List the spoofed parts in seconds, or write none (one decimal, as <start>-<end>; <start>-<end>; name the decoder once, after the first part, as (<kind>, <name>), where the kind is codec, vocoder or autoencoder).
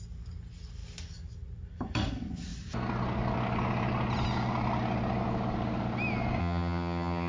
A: 6.4-7.3 (vocoder, HiFi-GAN)